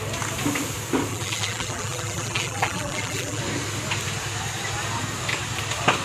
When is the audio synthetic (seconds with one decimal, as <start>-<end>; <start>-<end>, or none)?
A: 1.1-3.4